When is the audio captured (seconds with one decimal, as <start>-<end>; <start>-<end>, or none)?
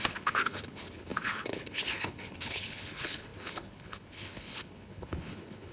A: none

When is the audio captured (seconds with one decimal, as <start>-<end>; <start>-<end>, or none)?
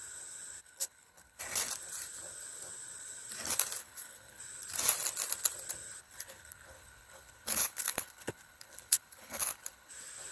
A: 0.0-0.6; 1.4-3.8; 4.4-6.0; 9.9-10.3